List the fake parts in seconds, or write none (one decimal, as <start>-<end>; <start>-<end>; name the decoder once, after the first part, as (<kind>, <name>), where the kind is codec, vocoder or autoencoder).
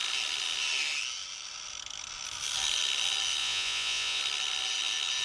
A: 3.4-4.2 (vocoder, Vocos)